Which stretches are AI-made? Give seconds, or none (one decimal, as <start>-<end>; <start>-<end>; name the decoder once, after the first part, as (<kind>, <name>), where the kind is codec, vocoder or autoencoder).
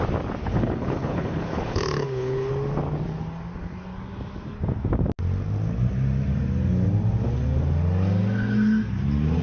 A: 0.4-2.5 (codec, HILCodec)